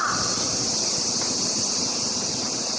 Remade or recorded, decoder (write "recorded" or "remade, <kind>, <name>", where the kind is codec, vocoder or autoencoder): recorded